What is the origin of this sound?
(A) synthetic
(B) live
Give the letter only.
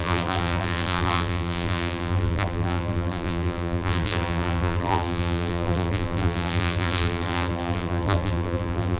A